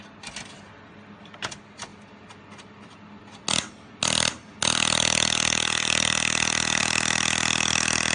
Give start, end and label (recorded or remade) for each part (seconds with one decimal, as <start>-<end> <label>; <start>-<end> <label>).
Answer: 0.0-8.1 recorded